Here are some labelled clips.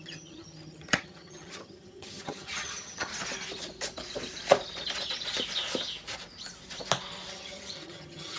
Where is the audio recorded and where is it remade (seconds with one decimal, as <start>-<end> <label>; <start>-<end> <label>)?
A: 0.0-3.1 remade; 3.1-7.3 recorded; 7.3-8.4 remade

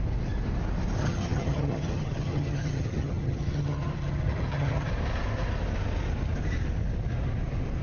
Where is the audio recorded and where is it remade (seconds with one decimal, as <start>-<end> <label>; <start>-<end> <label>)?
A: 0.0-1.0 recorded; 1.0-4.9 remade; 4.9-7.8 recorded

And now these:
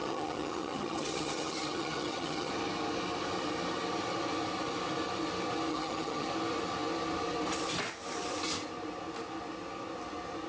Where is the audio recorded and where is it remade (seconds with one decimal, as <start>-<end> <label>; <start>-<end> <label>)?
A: 0.0-2.5 remade; 2.5-5.7 recorded; 5.7-6.3 remade; 6.3-10.5 recorded

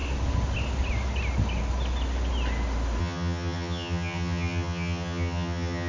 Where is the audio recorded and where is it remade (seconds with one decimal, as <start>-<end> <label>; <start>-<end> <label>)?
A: 0.0-3.0 recorded; 3.0-5.9 remade